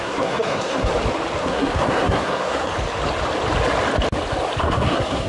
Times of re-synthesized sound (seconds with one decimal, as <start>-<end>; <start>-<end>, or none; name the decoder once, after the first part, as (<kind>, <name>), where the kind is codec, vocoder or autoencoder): 0.0-0.9 (codec, SNAC); 1.4-2.7; 4.6-5.3